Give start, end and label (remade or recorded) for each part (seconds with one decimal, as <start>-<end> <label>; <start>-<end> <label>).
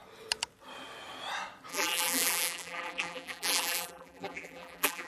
0.0-1.7 recorded; 1.7-5.1 remade